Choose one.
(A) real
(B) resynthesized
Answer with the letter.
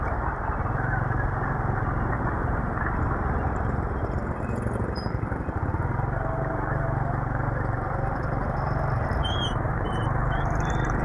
B